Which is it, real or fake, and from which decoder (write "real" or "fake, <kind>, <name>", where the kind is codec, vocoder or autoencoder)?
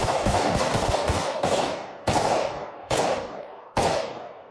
fake, codec, DAC